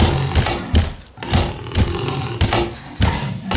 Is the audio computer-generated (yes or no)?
no